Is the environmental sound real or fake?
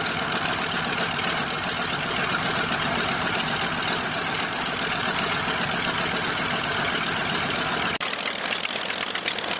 real